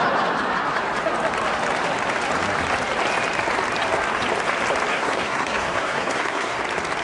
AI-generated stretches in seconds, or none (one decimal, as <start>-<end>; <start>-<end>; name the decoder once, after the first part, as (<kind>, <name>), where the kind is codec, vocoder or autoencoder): 4.9-6.6 (codec, SNAC)